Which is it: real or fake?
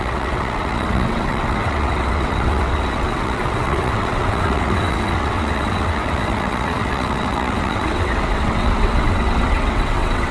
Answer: fake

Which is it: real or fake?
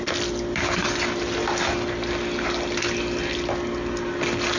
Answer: real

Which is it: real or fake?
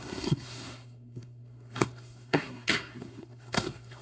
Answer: fake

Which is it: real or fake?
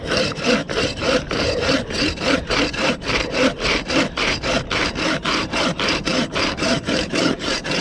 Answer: fake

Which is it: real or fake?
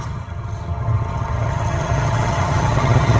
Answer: fake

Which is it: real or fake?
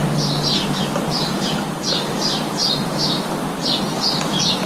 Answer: real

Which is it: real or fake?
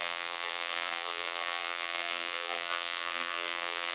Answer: fake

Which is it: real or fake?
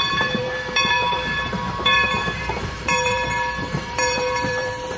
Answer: fake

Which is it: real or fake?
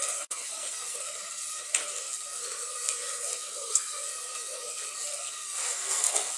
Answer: fake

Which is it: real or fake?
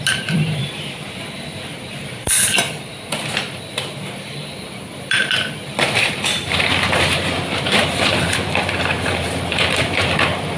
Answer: fake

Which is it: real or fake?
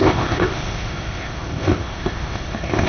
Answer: fake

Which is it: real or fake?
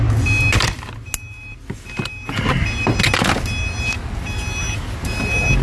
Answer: real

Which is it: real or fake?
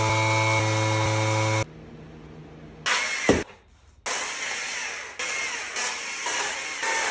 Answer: real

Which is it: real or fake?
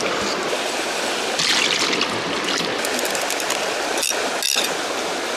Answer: real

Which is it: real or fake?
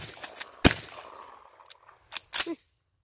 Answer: real